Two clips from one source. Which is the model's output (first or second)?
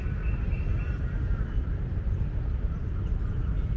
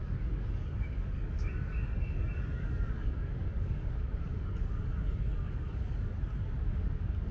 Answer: second